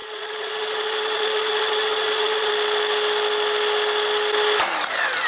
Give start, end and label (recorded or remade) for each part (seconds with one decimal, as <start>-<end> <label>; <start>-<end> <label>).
0.0-2.5 remade; 2.5-5.3 recorded